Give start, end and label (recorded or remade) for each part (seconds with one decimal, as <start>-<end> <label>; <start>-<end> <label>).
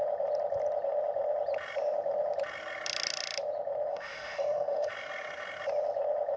0.0-3.9 recorded; 3.9-4.9 remade; 4.9-6.4 recorded